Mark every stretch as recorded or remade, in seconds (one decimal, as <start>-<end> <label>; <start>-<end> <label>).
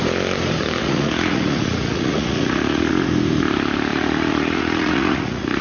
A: 0.0-0.8 recorded; 0.8-2.9 remade; 2.9-3.9 recorded; 3.9-5.6 remade